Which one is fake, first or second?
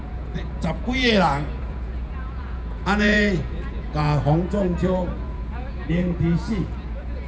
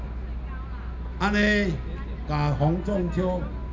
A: first